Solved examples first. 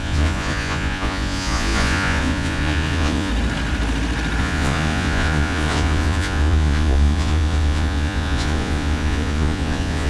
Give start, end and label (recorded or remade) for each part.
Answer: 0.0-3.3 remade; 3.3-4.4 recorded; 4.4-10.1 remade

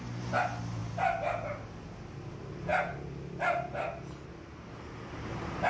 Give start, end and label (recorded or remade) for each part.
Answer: 0.0-5.7 recorded

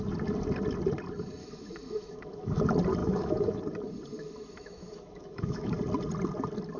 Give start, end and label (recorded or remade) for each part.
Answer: 0.0-1.4 recorded; 1.4-2.6 remade; 2.6-3.0 recorded; 3.0-3.6 remade; 3.6-4.2 recorded; 4.2-5.7 remade; 5.7-6.8 recorded

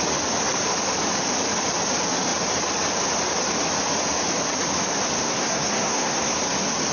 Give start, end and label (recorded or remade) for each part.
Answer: 0.0-5.2 recorded; 5.2-6.4 remade; 6.4-6.9 recorded